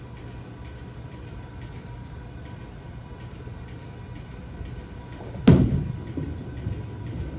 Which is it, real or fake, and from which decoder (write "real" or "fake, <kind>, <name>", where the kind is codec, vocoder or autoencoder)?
real